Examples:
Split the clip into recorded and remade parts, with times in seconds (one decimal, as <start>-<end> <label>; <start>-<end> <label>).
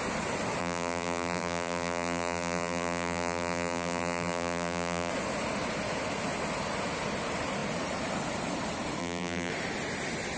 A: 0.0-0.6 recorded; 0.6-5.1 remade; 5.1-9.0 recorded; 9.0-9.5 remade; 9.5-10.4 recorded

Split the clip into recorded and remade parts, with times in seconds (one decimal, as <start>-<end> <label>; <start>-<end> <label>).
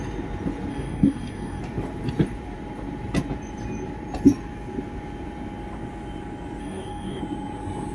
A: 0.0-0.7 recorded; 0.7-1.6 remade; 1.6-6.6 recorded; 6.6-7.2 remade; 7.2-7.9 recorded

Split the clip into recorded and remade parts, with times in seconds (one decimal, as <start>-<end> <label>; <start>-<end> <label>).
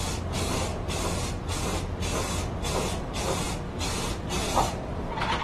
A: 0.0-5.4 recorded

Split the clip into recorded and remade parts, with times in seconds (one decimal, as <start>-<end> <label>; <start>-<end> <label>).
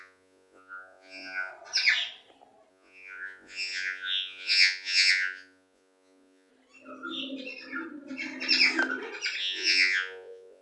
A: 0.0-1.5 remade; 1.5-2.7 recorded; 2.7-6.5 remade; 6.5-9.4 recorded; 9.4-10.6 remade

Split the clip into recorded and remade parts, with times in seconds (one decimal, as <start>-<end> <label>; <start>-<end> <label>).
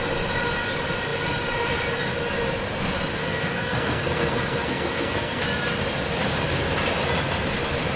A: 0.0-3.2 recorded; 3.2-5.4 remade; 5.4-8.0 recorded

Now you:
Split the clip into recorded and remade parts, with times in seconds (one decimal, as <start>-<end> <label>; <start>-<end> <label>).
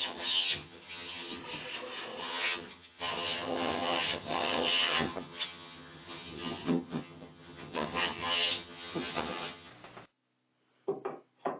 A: 0.0-1.4 remade; 1.4-2.2 recorded; 2.2-9.7 remade; 9.7-11.6 recorded